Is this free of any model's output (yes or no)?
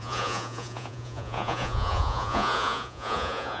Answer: no